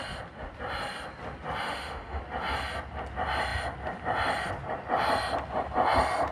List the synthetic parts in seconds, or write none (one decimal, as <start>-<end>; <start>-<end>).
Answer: 1.7-2.2